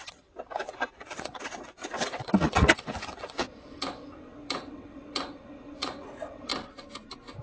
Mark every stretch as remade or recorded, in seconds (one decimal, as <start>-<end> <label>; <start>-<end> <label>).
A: 0.0-6.5 remade; 6.5-7.4 recorded